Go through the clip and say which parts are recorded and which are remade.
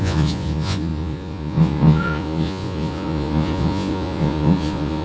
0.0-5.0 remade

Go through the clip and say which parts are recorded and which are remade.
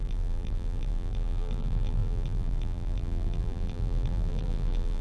0.0-5.0 remade